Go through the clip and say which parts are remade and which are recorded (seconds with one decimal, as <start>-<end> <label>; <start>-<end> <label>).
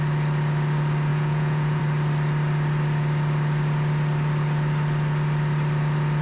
0.0-1.1 recorded; 1.1-1.8 remade; 1.8-6.2 recorded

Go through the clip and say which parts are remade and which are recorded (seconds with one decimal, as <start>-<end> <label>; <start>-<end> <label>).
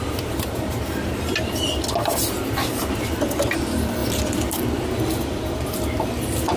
0.0-6.6 recorded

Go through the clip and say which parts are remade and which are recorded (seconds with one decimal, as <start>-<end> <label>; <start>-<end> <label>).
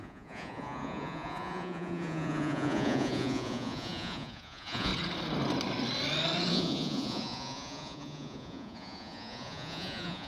0.0-4.9 remade; 4.9-6.5 recorded; 6.5-10.3 remade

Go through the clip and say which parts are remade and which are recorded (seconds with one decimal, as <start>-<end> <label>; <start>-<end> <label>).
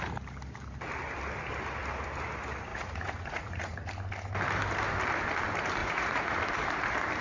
0.0-2.7 recorded; 2.7-3.9 remade; 3.9-5.8 recorded; 5.8-6.4 remade; 6.4-7.2 recorded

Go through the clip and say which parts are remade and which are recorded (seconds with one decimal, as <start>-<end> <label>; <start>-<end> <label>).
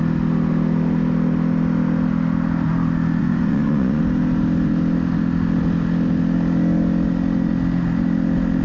0.0-3.2 recorded; 3.2-4.0 remade; 4.0-8.6 recorded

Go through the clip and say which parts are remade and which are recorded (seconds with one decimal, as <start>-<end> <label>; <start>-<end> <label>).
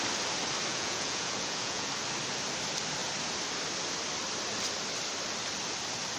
0.0-0.7 recorded; 0.7-1.9 remade; 1.9-6.2 recorded